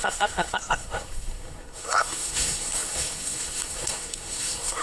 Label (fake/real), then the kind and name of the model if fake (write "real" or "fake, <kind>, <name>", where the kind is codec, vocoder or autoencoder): fake, codec, SNAC